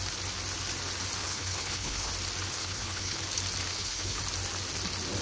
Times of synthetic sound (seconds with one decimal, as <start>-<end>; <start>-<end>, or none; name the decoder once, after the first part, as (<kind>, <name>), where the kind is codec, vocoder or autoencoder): 1.2-2.1 (codec, HILCodec); 2.6-3.2; 3.7-4.2